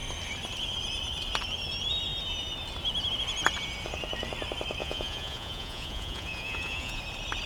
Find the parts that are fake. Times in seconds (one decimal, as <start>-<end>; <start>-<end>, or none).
4.8-7.0

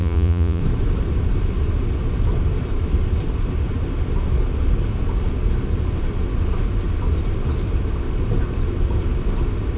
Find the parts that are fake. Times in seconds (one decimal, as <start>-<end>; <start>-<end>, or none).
0.0-0.6

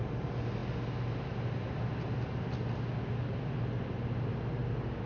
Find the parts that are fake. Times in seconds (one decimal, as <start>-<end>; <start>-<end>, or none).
none

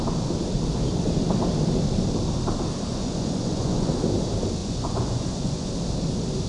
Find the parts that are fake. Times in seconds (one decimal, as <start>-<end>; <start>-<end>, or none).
2.9-3.9; 4.6-5.7

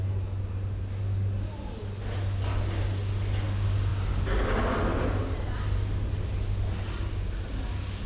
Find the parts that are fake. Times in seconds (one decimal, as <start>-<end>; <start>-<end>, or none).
none